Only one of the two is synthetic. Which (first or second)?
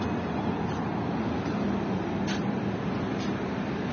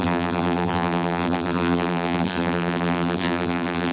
second